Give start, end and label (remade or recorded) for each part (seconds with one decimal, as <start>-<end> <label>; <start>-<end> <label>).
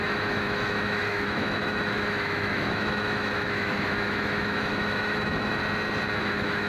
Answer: 0.0-5.6 remade; 5.6-6.2 recorded; 6.2-6.7 remade